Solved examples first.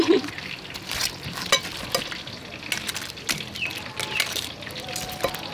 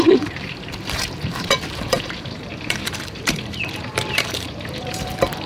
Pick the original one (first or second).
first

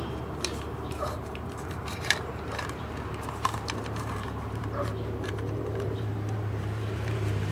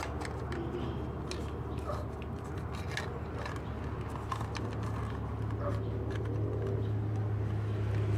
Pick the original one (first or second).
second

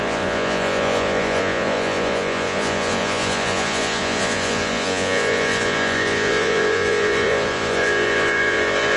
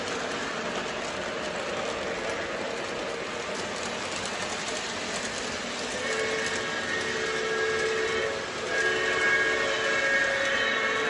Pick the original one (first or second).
second